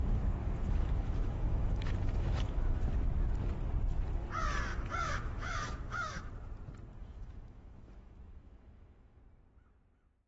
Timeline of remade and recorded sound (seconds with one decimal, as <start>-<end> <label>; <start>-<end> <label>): 0.0-0.4 recorded; 0.4-2.9 remade; 2.9-4.7 recorded; 4.7-6.3 remade; 6.3-6.9 recorded; 6.9-9.2 remade; 9.2-10.3 recorded